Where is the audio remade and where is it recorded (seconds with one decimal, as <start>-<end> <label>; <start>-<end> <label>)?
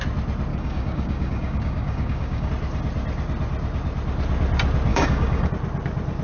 0.0-0.5 recorded; 0.5-2.5 remade; 2.5-4.9 recorded; 4.9-5.5 remade; 5.5-6.2 recorded